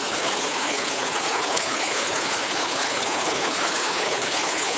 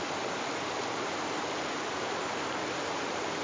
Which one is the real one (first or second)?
second